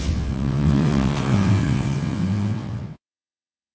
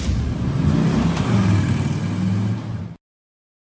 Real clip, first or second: second